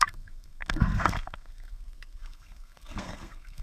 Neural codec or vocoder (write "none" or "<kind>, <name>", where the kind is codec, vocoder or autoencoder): codec, SNAC